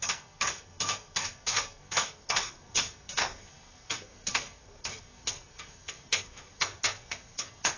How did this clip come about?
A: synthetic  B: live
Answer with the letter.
A